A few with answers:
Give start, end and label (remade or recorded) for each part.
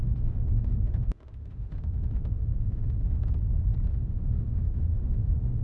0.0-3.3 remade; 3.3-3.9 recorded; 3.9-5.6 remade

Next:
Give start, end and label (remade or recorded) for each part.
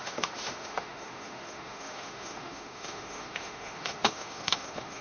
0.0-5.0 remade